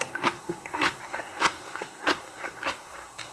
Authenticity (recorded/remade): remade